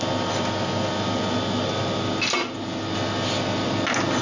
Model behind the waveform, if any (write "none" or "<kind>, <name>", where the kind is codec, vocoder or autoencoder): none